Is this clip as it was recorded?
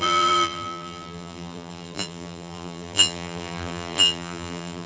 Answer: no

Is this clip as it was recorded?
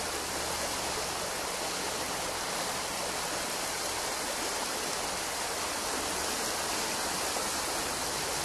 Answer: yes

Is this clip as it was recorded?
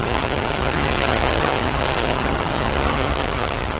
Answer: no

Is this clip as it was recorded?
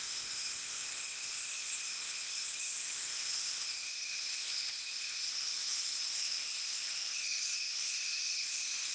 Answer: no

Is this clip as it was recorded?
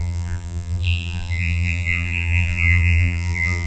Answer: no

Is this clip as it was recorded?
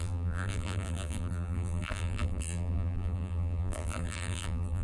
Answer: no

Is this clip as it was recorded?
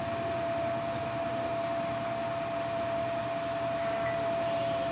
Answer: yes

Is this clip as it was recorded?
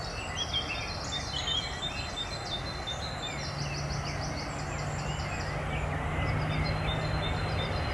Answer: yes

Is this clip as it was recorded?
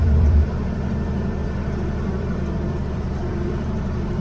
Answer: no